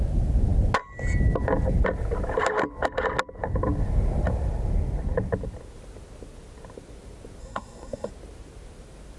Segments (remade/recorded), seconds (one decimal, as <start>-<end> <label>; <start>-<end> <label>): 0.0-7.4 recorded; 7.4-8.1 remade; 8.1-9.2 recorded